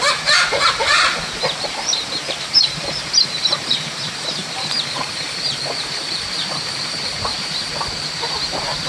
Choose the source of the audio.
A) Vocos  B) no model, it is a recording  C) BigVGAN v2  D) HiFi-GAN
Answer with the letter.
C